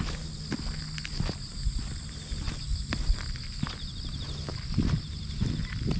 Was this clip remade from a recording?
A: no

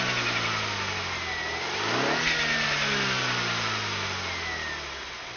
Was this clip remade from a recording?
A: no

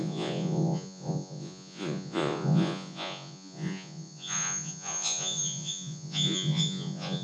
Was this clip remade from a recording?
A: yes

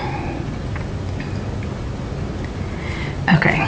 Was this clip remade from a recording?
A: no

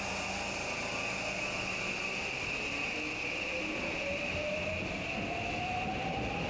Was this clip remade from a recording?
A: no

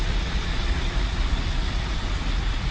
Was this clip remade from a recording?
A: yes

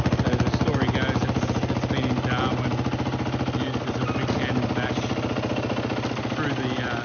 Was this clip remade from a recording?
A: no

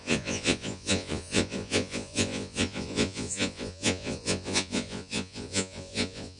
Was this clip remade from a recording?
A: yes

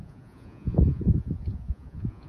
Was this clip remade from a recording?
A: yes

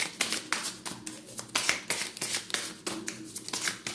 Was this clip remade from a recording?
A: no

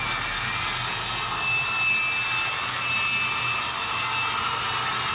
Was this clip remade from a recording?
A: no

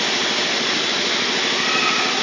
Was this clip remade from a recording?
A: no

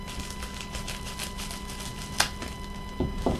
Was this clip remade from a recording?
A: no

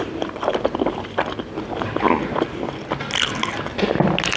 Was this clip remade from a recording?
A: no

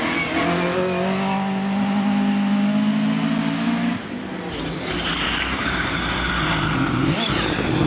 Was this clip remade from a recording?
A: no